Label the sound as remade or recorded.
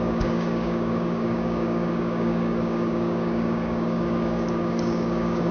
remade